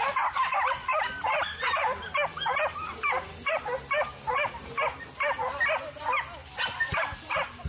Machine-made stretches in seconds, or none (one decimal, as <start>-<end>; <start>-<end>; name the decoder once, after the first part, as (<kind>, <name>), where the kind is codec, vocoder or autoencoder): 2.7-4.5 (vocoder, BigVGAN v2)

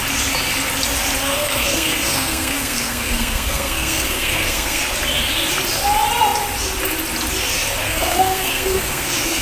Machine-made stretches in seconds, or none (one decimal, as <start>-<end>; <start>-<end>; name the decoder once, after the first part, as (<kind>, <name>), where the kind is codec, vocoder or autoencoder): 1.2-4.8 (codec, SNAC); 7.8-9.4

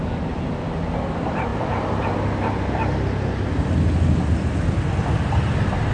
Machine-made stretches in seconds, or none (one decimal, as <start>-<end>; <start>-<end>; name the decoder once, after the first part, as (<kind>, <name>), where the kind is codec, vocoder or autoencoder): none

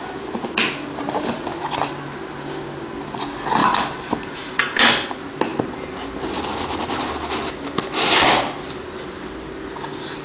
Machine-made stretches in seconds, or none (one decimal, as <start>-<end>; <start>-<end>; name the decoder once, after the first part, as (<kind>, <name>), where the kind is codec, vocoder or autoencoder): 3.6-5.1 (vocoder, BigVGAN v2)

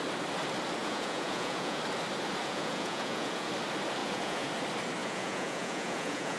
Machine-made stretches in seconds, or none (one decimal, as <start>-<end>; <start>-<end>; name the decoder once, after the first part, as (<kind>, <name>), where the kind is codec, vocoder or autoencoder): 0.8-1.8 (vocoder, Vocos); 2.4-3.5; 4.0-4.5; 5.0-6.4